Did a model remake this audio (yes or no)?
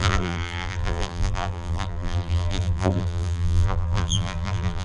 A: yes